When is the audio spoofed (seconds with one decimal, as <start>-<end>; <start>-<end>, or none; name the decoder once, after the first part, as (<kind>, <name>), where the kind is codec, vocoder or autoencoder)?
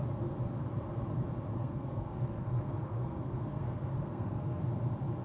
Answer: 1.5-4.6 (codec, SNAC)